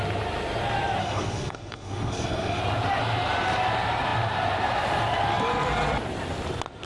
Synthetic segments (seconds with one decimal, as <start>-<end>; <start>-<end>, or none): 1.0-2.6